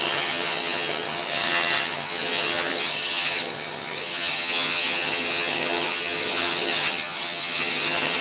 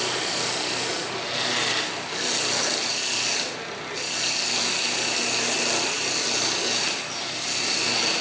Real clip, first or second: second